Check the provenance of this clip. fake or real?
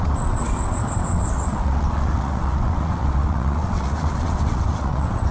fake